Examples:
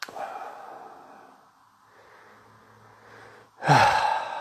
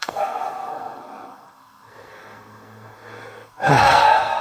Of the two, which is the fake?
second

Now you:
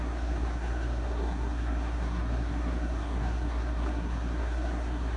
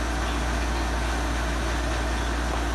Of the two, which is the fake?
first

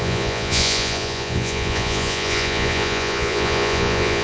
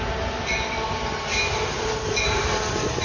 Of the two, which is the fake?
first